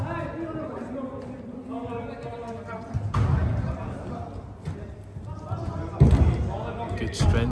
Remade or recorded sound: recorded